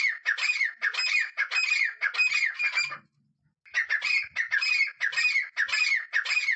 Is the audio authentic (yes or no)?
yes